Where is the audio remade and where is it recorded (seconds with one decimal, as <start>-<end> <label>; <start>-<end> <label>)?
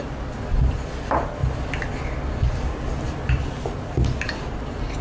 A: 0.0-5.0 recorded